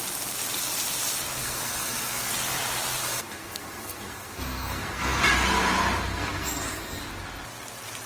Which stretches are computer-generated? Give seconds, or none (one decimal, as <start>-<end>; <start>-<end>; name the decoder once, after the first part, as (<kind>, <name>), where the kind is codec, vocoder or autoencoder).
1.4-2.3 (codec, SNAC); 3.0-5.2; 6.1-7.0